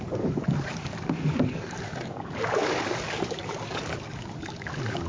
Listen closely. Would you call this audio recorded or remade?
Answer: remade